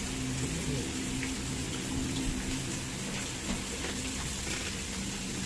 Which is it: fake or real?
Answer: real